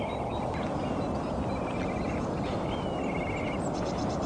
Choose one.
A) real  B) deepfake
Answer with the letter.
A